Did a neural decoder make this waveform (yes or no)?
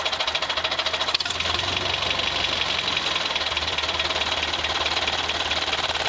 no